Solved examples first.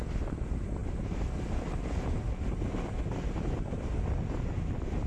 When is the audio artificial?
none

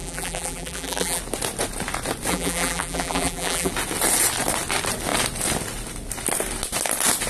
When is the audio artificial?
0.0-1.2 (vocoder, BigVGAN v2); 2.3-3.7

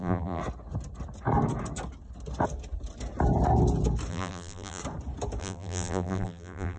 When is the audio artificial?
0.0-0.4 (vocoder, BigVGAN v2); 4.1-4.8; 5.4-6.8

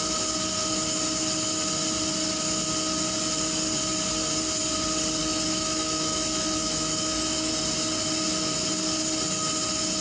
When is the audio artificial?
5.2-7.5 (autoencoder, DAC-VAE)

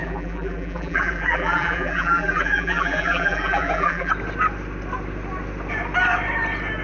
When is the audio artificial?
0.0-4.1 (vocoder, BigVGAN v2)

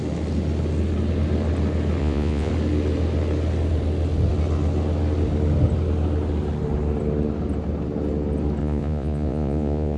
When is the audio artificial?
2.0-2.5 (vocoder, Vocos); 8.6-10.0

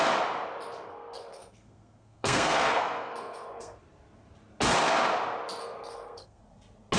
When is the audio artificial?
0.9-3.8 (codec, SNAC); 5.6-6.4

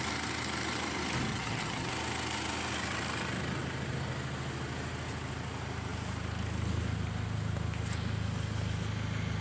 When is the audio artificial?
1.3-1.9 (vocoder, HiFi-GAN)